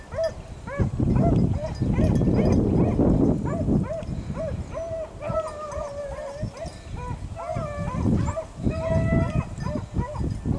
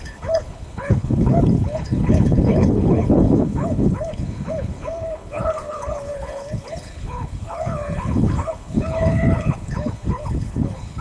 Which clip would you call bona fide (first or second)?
first